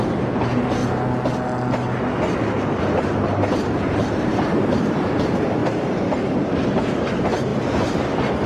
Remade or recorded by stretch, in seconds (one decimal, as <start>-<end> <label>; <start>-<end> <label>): 0.0-0.8 remade; 0.8-3.2 recorded; 3.2-8.5 remade